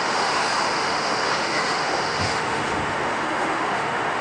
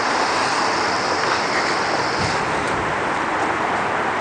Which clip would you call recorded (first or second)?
second